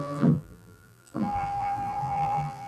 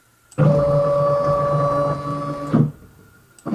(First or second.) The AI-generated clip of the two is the first